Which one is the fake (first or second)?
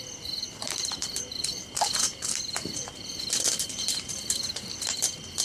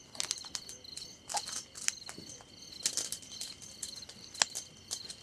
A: first